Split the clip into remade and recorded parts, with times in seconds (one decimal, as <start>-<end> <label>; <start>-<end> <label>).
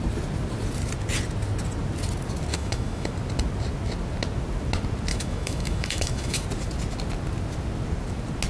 0.0-2.5 recorded; 2.5-3.1 remade; 3.1-5.1 recorded; 5.1-6.4 remade; 6.4-8.5 recorded